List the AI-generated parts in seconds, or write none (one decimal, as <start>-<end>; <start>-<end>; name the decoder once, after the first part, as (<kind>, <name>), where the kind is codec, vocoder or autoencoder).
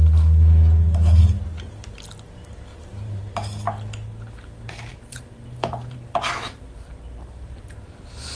2.7-3.2 (vocoder, BigVGAN v2); 4.9-6.6